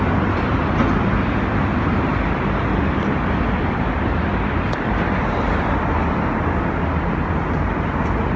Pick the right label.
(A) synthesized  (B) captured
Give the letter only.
B